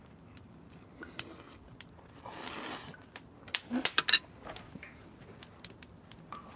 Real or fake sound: real